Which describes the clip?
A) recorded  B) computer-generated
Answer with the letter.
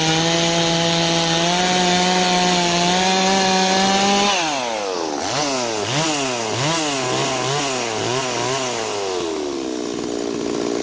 A